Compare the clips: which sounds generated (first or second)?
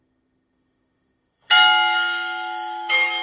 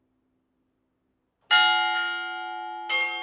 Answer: first